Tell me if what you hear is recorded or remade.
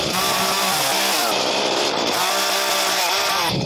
recorded